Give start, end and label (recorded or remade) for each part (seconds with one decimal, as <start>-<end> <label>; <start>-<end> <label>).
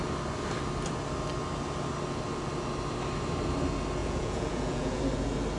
0.0-4.0 recorded; 4.0-5.0 remade; 5.0-5.6 recorded